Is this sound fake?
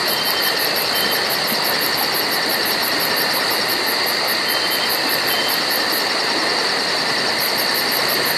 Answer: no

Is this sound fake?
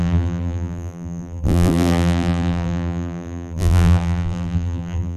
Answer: yes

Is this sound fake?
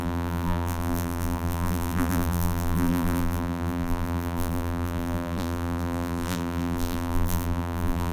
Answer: yes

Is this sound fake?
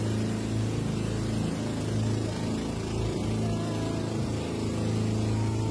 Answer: no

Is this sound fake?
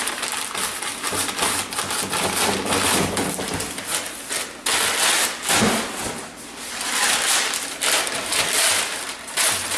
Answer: no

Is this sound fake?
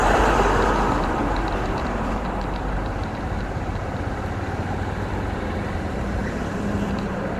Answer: yes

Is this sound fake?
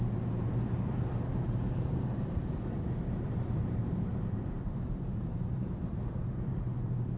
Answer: yes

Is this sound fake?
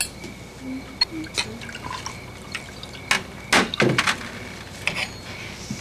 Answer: no